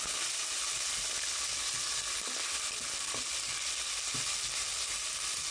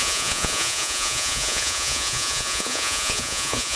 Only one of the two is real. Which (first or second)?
first